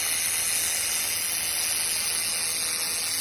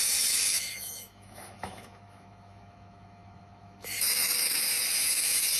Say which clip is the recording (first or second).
first